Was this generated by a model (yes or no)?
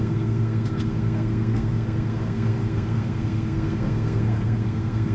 yes